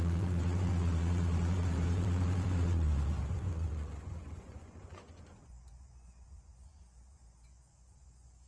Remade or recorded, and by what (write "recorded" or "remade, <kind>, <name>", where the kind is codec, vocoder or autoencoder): remade, vocoder, Vocos